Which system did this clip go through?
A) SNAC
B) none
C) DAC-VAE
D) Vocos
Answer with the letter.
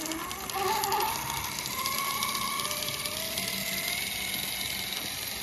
B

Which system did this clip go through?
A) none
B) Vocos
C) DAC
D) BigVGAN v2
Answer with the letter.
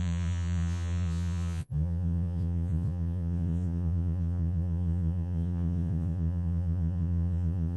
B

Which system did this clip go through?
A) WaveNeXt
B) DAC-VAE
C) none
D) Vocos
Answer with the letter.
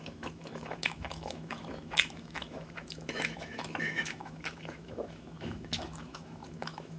B